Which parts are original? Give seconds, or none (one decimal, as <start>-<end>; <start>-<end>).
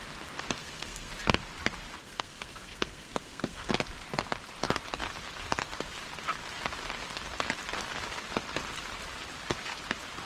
0.0-0.6; 1.1-2.0; 3.7-10.3